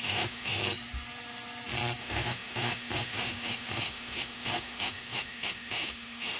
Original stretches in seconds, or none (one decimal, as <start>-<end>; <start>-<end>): 0.6-2.0

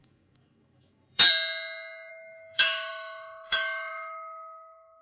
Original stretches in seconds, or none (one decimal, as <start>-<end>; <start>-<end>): 1.3-2.1

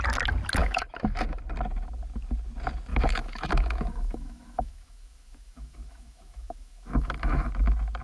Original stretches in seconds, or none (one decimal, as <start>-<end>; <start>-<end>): 0.0-0.6; 1.4-2.9; 7.5-8.0

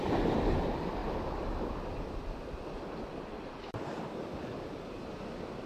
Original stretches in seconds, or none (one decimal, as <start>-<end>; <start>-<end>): 0.0-5.7

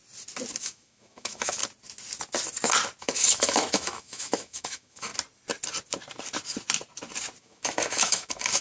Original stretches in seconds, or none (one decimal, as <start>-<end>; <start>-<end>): 0.0-0.6; 1.6-3.0; 5.1-7.4